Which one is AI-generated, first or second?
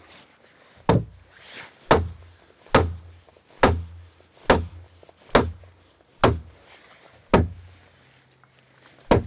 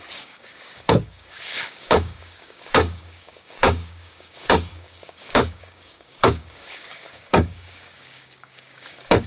second